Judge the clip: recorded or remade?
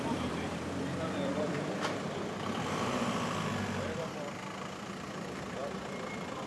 remade